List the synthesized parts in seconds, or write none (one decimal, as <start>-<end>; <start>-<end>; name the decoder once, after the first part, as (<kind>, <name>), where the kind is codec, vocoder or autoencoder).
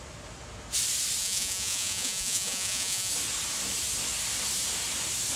1.2-3.1 (vocoder, Vocos)